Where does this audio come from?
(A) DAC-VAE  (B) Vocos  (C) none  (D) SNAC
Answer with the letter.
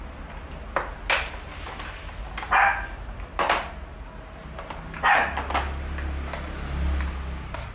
C